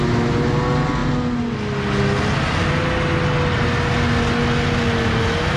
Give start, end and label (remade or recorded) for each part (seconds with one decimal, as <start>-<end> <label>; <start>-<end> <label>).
0.0-5.6 recorded